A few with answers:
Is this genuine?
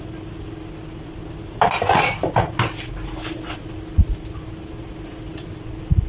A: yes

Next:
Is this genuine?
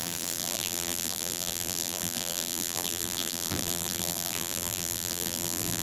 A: no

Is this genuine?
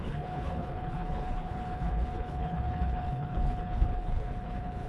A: no